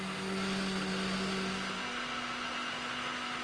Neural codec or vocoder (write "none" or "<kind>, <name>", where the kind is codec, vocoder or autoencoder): none